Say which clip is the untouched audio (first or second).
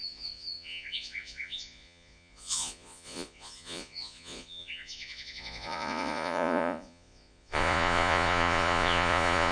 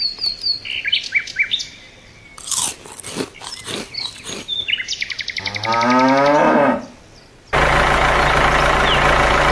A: second